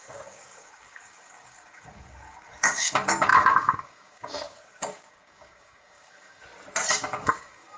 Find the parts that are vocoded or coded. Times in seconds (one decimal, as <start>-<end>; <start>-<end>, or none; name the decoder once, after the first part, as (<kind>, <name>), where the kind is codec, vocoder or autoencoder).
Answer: 0.0-6.4 (codec, DAC); 6.9-7.8